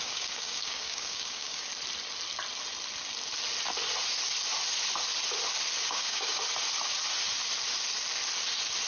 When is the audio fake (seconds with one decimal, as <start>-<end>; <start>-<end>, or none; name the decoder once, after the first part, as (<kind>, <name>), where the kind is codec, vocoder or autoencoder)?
0.0-1.7 (codec, DAC); 5.9-6.4